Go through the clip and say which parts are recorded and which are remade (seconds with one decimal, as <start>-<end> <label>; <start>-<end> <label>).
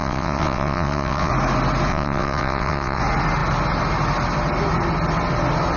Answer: 0.0-1.3 remade; 1.3-1.9 recorded; 1.9-3.0 remade; 3.0-5.8 recorded